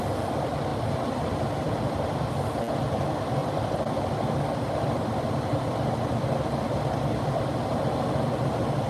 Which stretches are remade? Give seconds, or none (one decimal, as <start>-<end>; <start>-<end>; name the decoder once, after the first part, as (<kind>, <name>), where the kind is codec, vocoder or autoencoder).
0.7-2.3 (vocoder, BigVGAN v2); 3.4-7.4

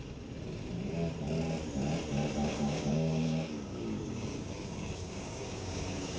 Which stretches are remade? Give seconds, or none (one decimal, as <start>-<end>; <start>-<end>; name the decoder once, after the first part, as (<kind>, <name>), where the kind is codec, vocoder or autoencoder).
2.4-6.2 (codec, DAC)

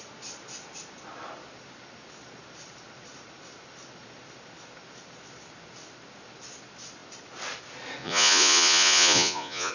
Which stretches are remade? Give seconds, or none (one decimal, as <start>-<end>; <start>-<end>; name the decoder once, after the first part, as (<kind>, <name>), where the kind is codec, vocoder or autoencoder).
8.0-9.7 (vocoder, Vocos)

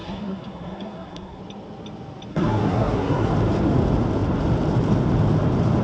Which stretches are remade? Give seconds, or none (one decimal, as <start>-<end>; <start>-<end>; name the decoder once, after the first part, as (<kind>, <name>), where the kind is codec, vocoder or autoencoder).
0.0-1.4 (codec, SNAC); 2.3-3.3

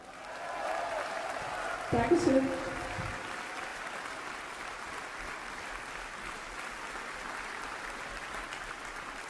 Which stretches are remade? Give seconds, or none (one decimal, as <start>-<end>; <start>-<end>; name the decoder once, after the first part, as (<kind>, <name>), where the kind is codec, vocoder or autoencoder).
none